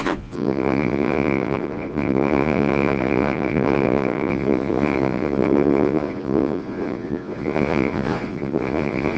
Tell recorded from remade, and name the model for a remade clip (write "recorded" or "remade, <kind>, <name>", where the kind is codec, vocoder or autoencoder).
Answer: remade, vocoder, Vocos